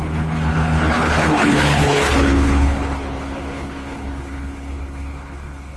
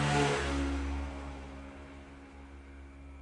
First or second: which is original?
second